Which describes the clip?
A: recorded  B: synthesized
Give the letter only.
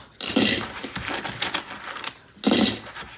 A